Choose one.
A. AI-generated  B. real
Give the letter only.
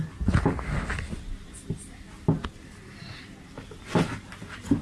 B